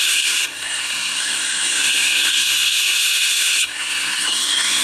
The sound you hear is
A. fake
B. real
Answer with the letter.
A